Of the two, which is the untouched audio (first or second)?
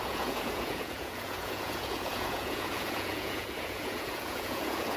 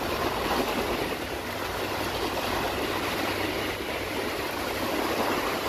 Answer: second